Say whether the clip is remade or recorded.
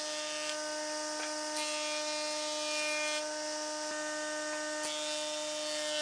recorded